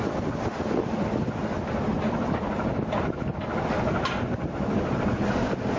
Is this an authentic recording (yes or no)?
yes